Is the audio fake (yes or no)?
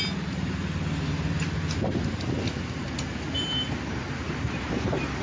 no